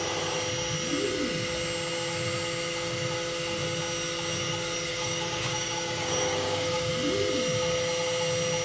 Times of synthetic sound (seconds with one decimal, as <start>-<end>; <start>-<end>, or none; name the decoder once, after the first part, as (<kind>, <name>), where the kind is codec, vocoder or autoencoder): 4.9-6.9 (codec, DAC)